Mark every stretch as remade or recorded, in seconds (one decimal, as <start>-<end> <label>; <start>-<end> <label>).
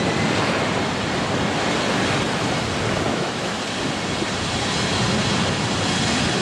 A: 0.0-3.1 recorded; 3.1-3.6 remade; 3.6-6.4 recorded